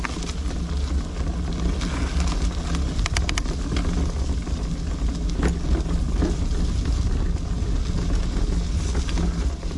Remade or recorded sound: recorded